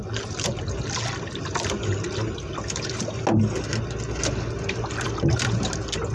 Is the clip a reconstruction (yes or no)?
no